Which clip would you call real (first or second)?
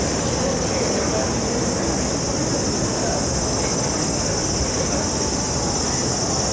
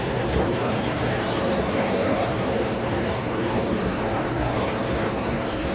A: first